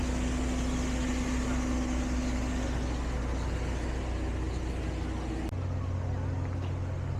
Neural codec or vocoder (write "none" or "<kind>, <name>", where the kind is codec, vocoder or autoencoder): none